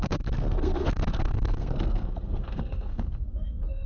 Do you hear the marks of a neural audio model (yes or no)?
yes